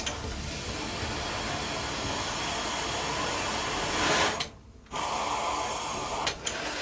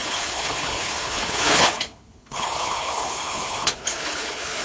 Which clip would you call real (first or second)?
first